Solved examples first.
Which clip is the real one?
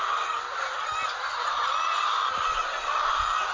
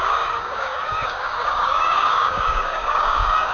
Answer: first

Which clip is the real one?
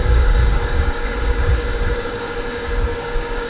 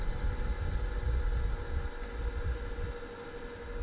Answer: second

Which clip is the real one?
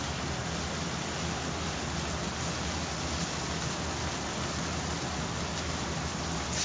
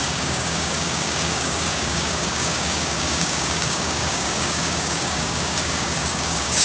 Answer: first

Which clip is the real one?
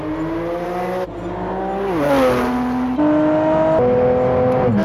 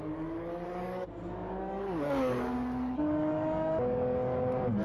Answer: first